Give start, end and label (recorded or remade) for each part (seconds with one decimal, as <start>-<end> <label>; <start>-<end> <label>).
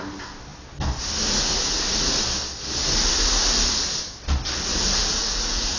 0.0-5.2 recorded; 5.2-5.8 remade